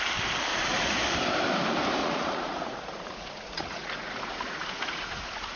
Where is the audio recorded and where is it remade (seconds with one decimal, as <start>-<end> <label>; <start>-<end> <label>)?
0.0-0.5 recorded; 0.5-1.0 remade; 1.0-2.0 recorded; 2.0-5.6 remade